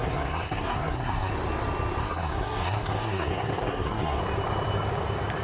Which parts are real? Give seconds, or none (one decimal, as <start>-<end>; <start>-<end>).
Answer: 1.3-2.0; 4.2-5.4